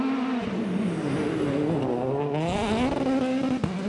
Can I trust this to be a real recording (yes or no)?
yes